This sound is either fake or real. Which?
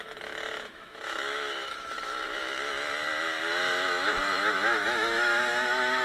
fake